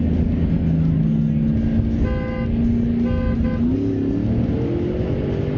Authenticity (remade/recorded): recorded